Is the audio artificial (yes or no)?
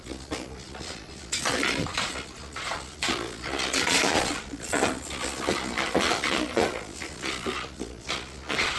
yes